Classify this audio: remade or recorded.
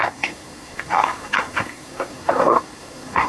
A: remade